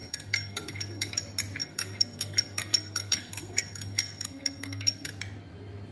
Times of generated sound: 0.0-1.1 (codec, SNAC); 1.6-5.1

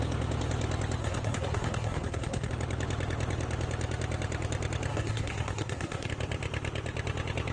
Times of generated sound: 1.0-2.5 (codec, SNAC); 4.9-6.1

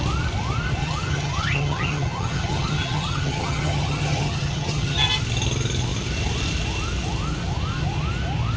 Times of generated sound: 0.8-5.1 (vocoder, HiFi-GAN)